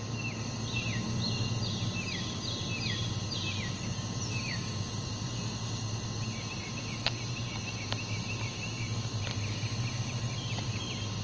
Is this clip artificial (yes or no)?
no